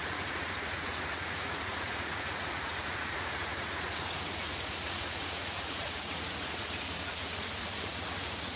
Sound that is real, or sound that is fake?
fake